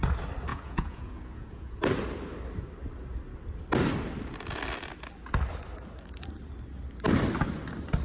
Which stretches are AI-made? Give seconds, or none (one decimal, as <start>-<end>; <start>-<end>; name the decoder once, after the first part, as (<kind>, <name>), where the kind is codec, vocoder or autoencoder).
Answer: 0.5-1.8 (vocoder, Vocos)